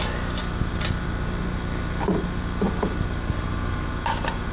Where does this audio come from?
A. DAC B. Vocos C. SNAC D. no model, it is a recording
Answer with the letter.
D